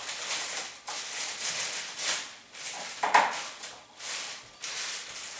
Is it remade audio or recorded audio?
recorded